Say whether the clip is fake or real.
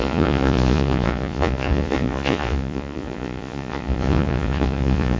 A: fake